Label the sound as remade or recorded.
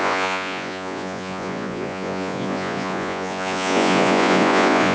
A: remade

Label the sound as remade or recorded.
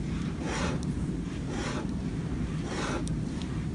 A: remade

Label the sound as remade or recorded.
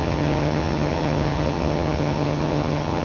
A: remade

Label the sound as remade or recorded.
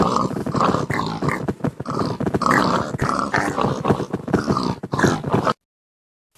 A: recorded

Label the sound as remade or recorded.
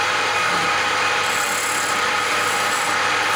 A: remade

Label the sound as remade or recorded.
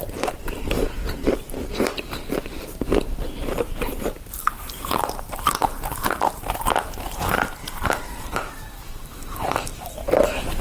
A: remade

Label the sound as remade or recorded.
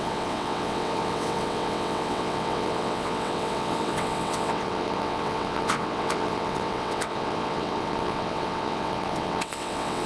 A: remade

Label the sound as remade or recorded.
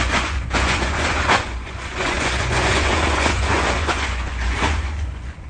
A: remade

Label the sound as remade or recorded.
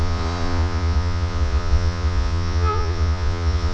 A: remade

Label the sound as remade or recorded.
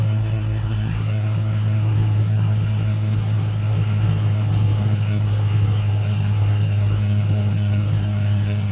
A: remade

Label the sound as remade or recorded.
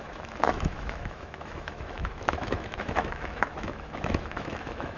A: remade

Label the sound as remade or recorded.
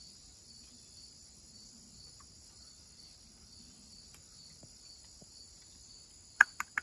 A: recorded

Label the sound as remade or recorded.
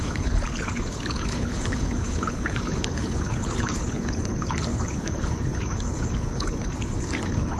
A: remade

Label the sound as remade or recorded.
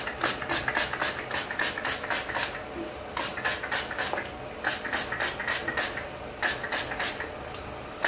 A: recorded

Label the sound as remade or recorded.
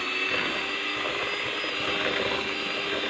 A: recorded